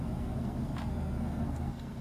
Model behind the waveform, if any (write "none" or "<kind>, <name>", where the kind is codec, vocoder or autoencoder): codec, SNAC